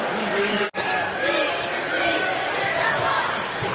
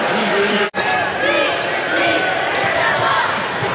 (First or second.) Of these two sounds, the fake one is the first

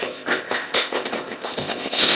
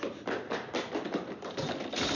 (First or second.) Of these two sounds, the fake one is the first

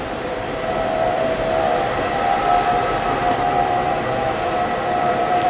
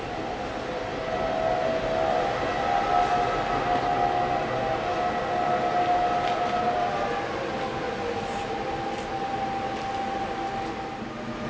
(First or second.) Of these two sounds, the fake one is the first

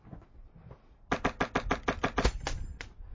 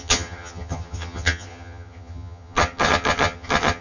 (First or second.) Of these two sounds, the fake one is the second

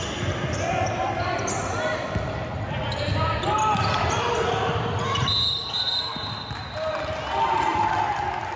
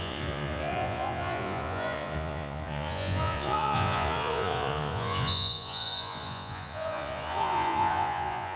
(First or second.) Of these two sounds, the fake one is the second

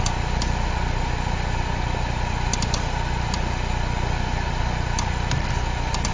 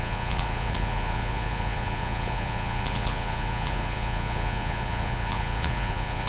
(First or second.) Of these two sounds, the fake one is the second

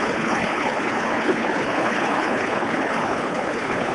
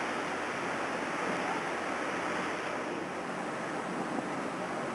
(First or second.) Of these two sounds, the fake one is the first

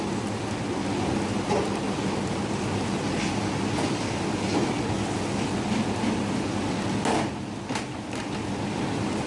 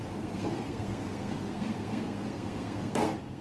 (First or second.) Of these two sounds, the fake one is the second